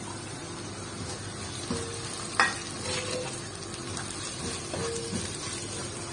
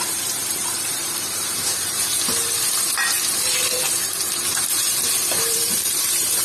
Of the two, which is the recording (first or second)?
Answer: first